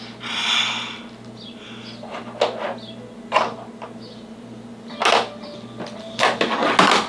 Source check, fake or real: real